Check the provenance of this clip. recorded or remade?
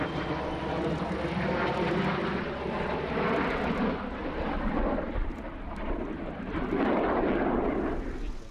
recorded